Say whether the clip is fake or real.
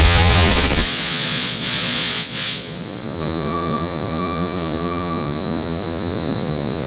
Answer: fake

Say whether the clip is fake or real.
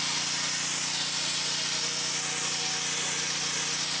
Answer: real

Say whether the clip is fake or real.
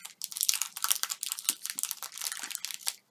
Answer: real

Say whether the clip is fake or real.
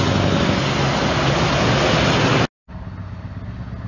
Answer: real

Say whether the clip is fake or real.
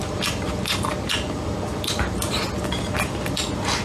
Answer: real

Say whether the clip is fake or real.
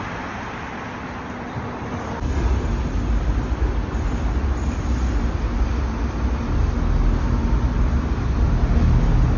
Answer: real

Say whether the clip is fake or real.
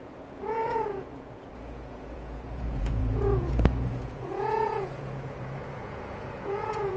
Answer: fake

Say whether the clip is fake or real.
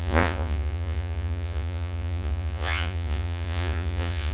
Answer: fake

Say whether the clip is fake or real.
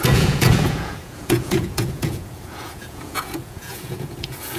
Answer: fake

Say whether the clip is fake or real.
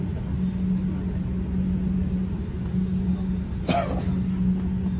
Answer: real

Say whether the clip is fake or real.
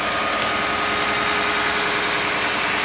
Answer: real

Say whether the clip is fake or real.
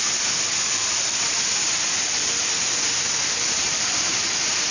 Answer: real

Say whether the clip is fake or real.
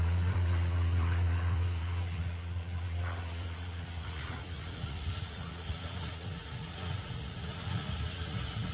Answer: fake